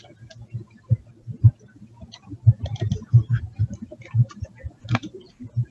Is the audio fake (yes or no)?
no